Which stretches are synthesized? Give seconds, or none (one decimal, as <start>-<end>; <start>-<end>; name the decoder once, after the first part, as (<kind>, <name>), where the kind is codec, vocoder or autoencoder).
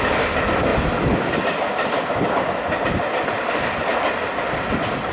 none